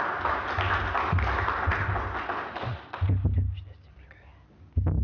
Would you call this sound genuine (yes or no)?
yes